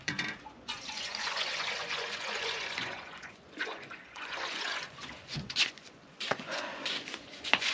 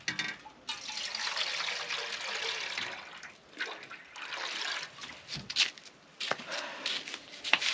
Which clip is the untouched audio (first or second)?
second